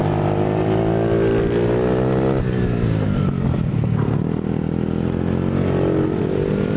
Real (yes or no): yes